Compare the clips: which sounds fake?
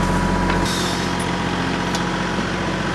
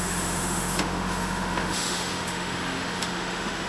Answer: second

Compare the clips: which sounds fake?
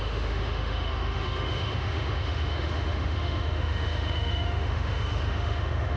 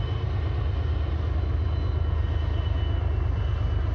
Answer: first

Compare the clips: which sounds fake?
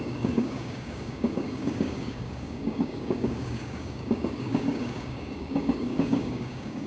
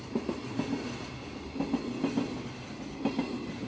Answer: first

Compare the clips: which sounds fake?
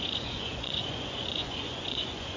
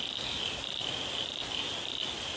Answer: first